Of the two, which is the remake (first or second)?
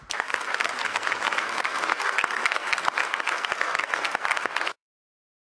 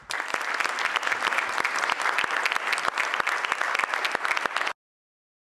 first